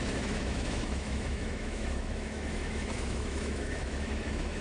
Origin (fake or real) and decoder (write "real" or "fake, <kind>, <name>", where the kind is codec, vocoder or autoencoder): fake, autoencoder, DAC-VAE